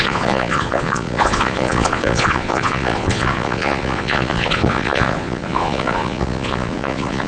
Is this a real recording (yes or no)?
no